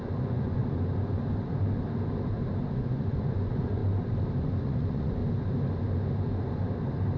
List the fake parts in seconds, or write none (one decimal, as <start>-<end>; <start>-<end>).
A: 0.0-0.6; 2.7-3.8; 4.4-5.2